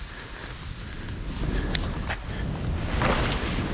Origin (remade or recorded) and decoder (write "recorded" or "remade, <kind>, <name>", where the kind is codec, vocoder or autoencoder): recorded